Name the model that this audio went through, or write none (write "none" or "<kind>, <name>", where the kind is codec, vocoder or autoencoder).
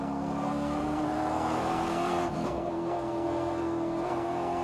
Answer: codec, SNAC